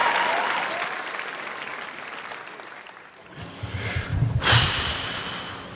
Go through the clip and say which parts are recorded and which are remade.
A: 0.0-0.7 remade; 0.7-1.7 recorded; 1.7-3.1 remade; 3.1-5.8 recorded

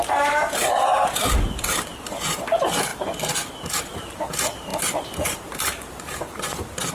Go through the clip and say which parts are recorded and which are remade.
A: 0.0-2.9 remade; 2.9-3.7 recorded; 3.7-6.9 remade

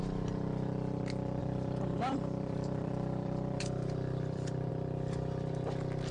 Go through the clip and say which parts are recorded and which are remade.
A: 0.0-1.4 recorded; 1.4-4.7 remade; 4.7-6.1 recorded